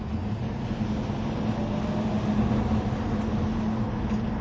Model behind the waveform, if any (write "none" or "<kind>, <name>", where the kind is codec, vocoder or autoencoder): none